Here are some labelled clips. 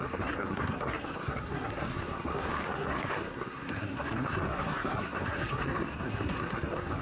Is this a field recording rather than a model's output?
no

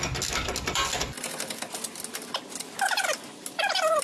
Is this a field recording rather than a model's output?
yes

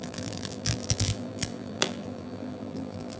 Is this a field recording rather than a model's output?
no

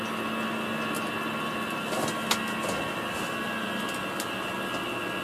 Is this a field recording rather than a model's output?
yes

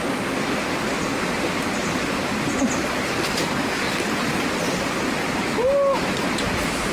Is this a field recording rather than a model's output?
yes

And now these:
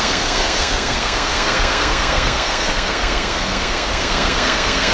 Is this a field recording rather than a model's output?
no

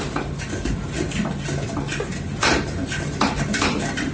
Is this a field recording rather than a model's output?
yes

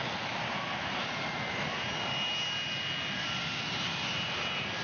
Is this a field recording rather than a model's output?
yes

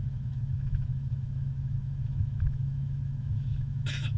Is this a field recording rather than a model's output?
no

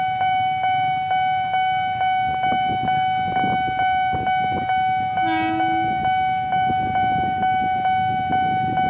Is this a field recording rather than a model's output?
yes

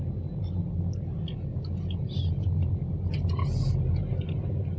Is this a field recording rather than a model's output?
yes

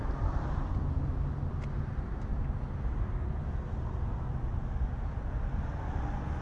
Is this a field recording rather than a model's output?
yes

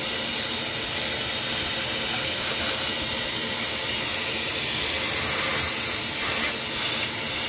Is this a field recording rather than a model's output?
yes